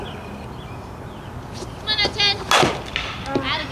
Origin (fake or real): real